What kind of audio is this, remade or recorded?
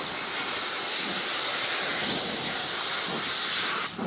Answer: recorded